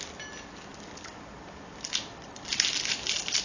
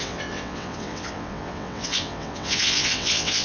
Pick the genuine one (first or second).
first